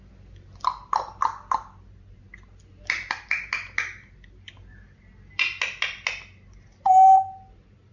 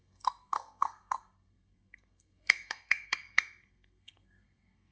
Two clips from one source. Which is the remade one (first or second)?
second